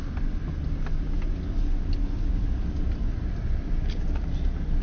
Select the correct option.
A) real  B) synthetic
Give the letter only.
A